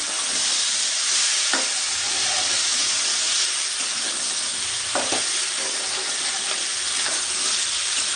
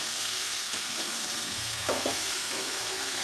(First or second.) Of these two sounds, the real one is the first